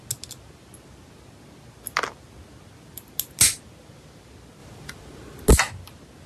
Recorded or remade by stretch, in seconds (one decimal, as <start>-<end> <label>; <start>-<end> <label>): 0.0-6.3 recorded